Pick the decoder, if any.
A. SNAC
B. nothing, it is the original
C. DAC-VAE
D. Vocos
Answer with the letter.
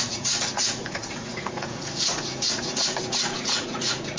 D